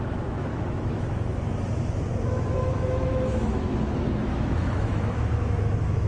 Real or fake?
fake